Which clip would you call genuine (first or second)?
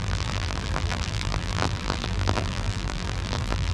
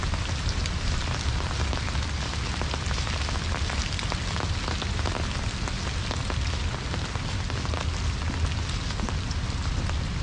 second